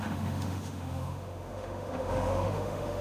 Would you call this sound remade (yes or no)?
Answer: yes